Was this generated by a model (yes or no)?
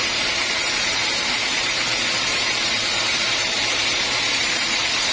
yes